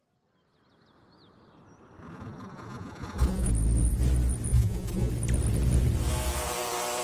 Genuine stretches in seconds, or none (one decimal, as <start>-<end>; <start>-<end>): 0.0-2.0; 3.5-4.5; 5.1-7.0